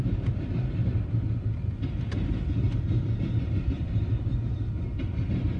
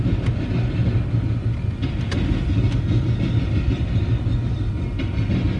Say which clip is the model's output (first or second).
first